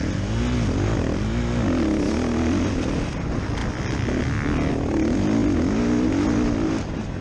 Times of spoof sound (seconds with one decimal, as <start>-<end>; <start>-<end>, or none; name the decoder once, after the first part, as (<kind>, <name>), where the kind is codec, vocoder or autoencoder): none